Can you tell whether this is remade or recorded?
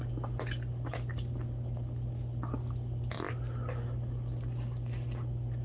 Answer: recorded